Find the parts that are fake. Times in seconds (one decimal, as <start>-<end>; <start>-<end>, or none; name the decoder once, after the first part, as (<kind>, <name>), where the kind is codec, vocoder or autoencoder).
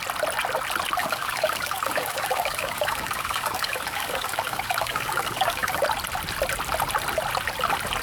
1.0-5.8 (codec, DAC)